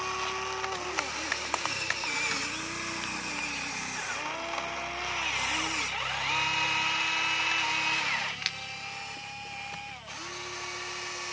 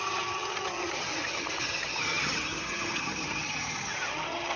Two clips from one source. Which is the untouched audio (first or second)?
first